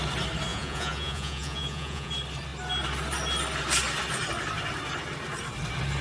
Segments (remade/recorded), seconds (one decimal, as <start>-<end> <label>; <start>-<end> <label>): 0.0-0.5 recorded; 0.5-2.1 remade; 2.1-6.0 recorded